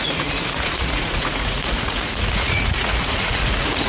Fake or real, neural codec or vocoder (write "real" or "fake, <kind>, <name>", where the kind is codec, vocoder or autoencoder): fake, vocoder, Vocos